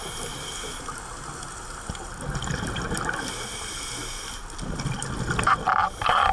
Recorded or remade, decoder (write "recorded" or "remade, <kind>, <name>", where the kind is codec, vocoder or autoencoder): recorded